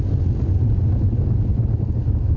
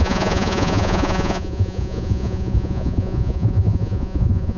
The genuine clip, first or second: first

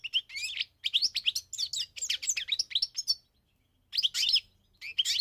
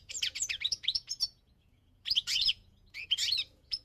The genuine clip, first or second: first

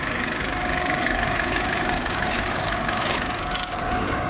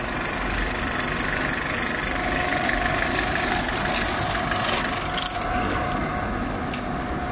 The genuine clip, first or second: second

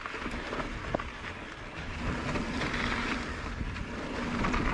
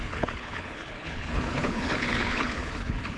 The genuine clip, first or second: first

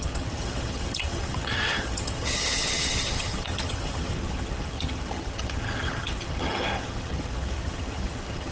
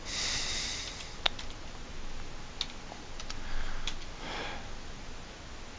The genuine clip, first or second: second